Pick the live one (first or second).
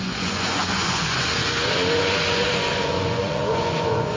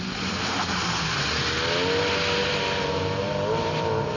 second